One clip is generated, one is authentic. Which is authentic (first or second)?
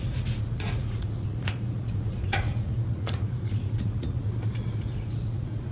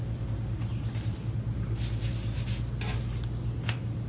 second